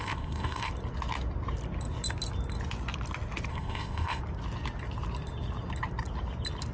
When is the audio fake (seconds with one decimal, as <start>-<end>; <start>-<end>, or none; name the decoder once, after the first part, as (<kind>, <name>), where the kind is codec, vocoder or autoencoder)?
0.0-0.7 (codec, ZipCodec); 3.5-4.2